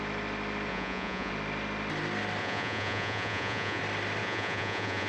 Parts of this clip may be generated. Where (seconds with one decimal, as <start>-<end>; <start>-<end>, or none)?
0.7-1.3; 2.4-3.8; 4.2-5.1